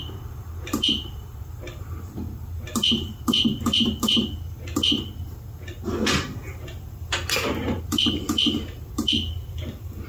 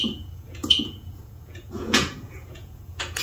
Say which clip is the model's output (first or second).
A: second